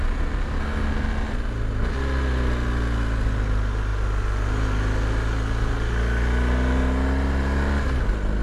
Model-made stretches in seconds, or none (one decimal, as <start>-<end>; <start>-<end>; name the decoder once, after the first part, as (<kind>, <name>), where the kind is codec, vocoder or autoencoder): none